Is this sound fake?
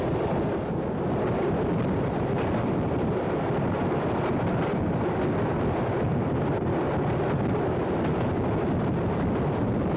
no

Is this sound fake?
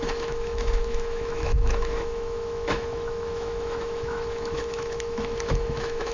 yes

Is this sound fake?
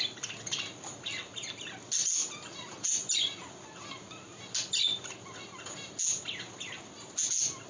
no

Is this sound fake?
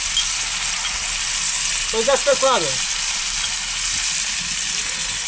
no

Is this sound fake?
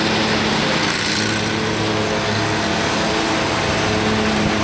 no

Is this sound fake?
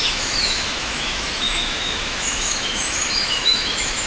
yes